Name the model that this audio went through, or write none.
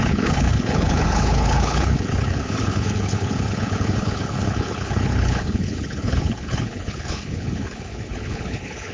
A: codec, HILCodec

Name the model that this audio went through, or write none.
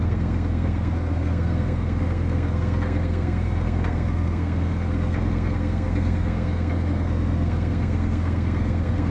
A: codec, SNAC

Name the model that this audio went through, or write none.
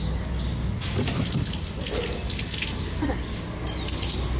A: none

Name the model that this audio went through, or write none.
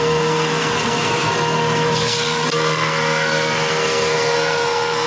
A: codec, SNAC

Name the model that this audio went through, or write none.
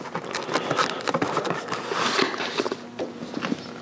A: none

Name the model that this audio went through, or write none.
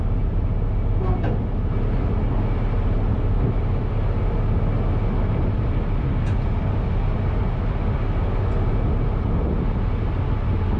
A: none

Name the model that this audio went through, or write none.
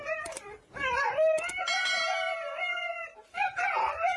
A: vocoder, BigVGAN v2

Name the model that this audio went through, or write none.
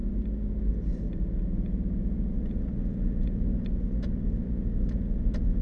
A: none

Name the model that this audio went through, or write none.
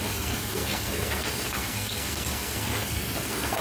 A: codec, SNAC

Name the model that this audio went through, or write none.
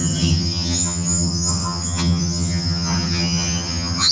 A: vocoder, HiFi-GAN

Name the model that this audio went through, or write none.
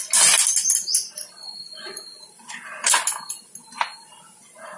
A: none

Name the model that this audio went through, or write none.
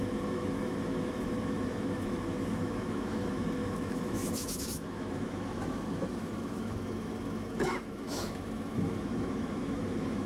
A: autoencoder, DAC-VAE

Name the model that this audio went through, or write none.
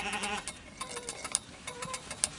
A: none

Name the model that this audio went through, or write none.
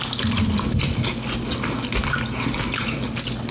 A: none